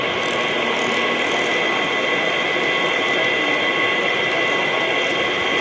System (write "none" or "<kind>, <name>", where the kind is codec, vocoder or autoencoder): none